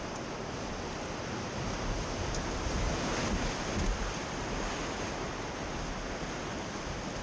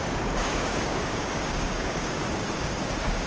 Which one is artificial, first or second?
second